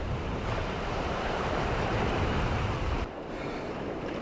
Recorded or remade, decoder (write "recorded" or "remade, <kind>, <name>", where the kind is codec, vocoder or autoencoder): remade, vocoder, BigVGAN v2